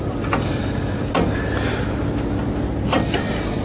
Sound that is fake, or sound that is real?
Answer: real